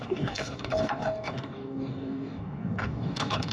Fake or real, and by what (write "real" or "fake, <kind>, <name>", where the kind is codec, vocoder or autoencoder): fake, codec, DAC